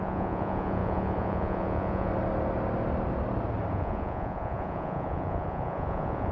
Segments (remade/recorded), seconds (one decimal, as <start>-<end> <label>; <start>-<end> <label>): 0.0-2.1 remade; 2.1-3.7 recorded; 3.7-6.3 remade